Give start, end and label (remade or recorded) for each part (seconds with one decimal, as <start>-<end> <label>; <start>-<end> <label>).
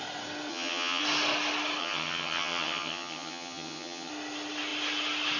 0.0-0.5 recorded; 0.5-1.0 remade; 1.0-1.8 recorded; 1.8-4.1 remade; 4.1-5.4 recorded